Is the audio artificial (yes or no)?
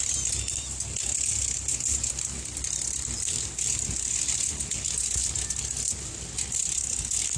no